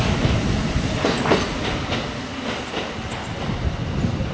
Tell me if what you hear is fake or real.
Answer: real